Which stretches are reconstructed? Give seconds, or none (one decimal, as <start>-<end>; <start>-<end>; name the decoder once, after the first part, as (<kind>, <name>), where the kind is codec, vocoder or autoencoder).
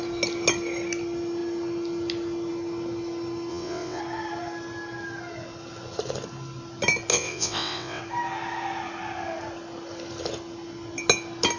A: 3.5-4.0 (vocoder, WaveNeXt); 7.1-8.0